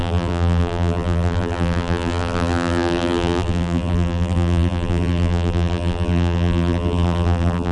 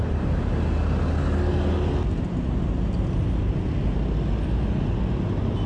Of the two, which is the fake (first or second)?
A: first